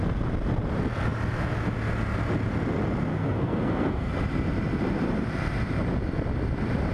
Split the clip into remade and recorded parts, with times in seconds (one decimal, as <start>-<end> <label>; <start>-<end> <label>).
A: 0.0-3.1 recorded; 3.1-4.1 remade; 4.1-6.9 recorded